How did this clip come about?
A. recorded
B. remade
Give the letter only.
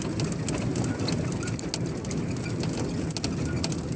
A